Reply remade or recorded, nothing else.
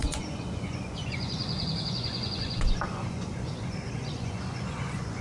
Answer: remade